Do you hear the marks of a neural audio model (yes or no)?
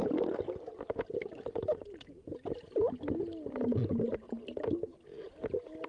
no